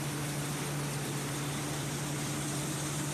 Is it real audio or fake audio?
real